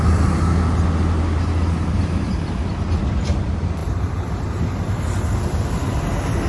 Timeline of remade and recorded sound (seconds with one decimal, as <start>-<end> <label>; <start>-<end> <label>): 0.0-3.8 recorded; 3.8-4.9 remade; 4.9-6.5 recorded